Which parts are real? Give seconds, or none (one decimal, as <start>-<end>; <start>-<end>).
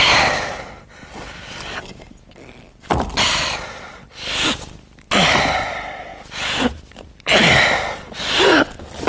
0.0-9.1